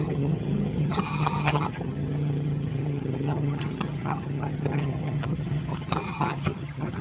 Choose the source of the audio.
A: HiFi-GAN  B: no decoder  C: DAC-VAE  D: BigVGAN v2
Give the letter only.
A